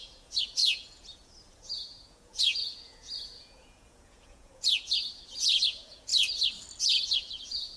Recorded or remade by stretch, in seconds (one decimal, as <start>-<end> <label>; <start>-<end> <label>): 0.0-6.1 remade; 6.1-6.8 recorded; 6.8-7.8 remade

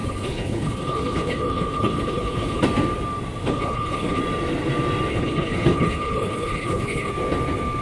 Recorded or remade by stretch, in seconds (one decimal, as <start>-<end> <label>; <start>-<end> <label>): 0.0-2.6 remade; 2.6-3.4 recorded; 3.4-4.2 remade; 4.2-5.1 recorded; 5.1-7.1 remade; 7.1-7.8 recorded

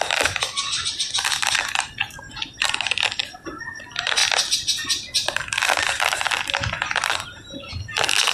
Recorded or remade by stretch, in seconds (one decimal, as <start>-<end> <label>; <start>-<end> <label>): 0.0-8.3 recorded